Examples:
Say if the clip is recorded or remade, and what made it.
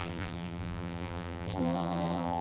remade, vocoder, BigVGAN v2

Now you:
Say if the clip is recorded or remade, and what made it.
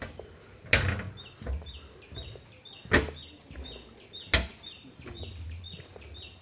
recorded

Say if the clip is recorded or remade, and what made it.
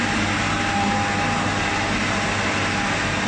recorded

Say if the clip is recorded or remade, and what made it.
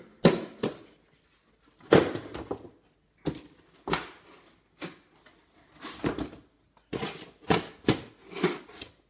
recorded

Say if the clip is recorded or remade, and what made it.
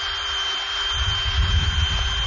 recorded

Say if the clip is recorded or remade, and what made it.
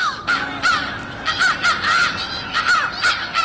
recorded